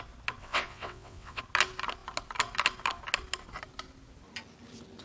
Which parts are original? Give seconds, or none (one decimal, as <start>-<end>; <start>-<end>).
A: 0.0-0.4; 1.4-5.0